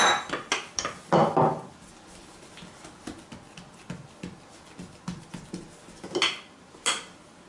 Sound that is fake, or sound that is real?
real